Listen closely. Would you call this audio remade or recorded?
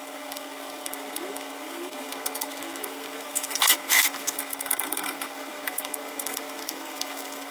remade